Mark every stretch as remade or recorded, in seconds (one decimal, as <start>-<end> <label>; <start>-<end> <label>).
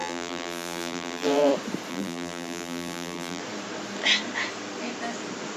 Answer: 0.0-1.5 remade; 1.5-1.9 recorded; 1.9-3.4 remade; 3.4-5.6 recorded